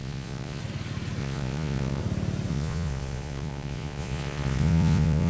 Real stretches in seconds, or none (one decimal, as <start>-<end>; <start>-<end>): 0.6-1.2; 2.0-2.5

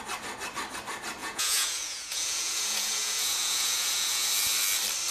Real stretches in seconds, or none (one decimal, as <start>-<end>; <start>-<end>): 0.0-1.2; 4.3-5.1

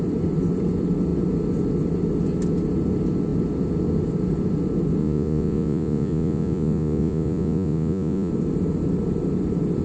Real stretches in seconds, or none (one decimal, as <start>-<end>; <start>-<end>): 0.0-5.0; 8.3-9.8

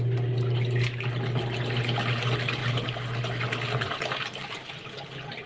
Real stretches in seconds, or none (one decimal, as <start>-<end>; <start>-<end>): 0.0-5.5